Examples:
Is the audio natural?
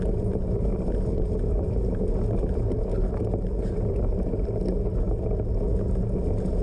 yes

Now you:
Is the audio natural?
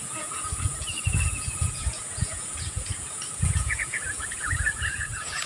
no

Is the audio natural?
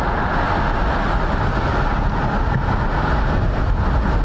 yes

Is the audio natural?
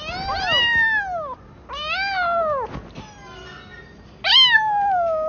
yes